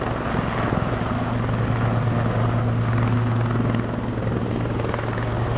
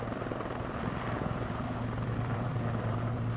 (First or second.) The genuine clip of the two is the first